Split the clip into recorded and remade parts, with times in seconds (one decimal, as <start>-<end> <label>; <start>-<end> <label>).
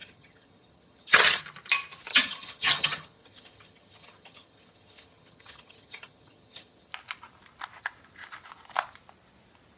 0.0-1.4 remade; 1.4-2.1 recorded; 2.1-6.9 remade; 6.9-9.8 recorded